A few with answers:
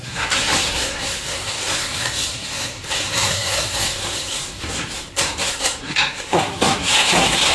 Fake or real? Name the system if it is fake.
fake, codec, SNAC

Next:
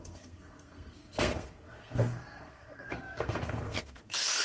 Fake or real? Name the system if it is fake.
fake, codec, SNAC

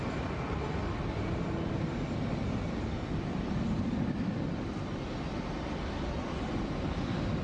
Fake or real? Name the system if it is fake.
real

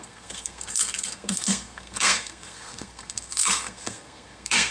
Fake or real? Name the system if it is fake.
fake, codec, SNAC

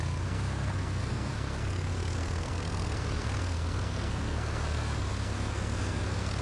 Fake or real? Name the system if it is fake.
fake, codec, SNAC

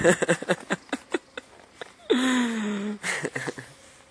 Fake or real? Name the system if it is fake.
real